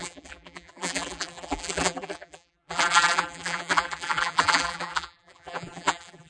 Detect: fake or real fake